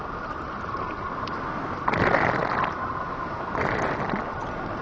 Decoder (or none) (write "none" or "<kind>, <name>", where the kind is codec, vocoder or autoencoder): none